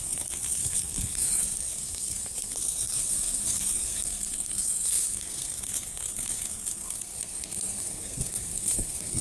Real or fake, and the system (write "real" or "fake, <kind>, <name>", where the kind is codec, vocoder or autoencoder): fake, codec, SNAC